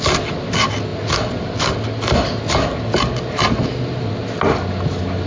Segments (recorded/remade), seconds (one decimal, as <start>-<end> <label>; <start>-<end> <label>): 0.0-5.3 recorded